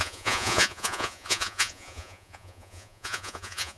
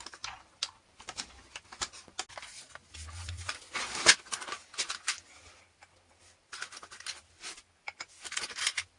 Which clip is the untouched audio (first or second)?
second